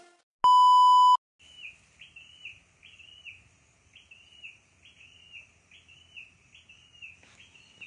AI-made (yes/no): no